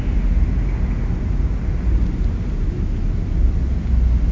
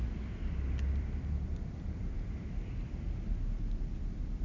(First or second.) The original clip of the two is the first